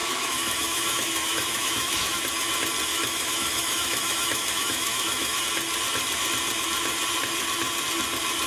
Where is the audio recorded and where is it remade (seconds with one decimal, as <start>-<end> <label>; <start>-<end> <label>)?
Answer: 0.0-2.2 remade; 2.2-2.9 recorded; 2.9-5.4 remade; 5.4-8.5 recorded